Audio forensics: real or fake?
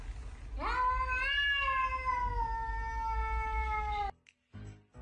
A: real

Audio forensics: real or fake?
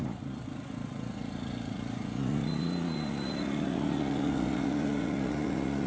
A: fake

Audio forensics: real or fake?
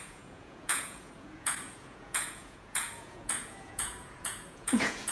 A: fake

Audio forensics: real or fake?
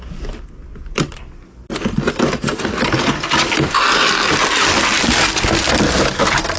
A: real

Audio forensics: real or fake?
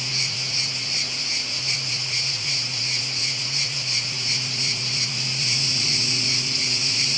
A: fake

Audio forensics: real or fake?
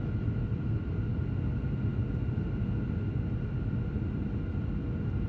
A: real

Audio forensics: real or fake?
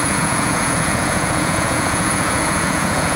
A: fake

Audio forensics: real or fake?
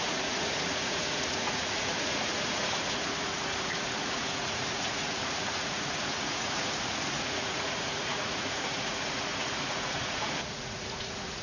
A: fake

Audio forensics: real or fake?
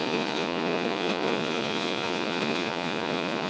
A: fake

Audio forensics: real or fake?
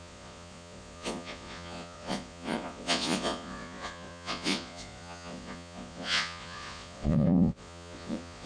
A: fake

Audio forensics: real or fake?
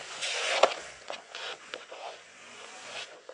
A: fake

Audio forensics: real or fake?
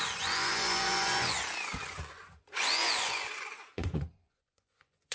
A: fake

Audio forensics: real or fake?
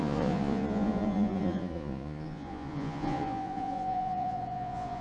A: fake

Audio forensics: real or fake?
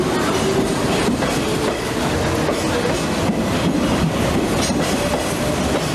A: real